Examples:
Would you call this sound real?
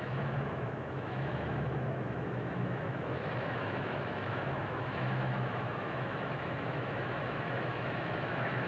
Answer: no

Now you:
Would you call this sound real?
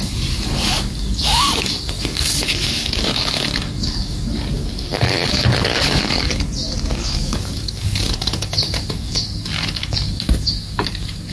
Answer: no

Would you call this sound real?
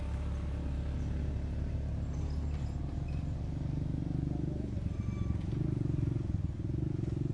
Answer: yes